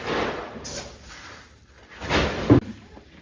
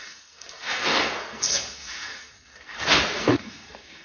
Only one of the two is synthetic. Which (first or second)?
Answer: second